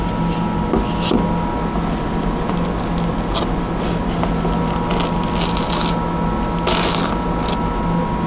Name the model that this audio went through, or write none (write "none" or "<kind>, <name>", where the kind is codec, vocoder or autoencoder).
none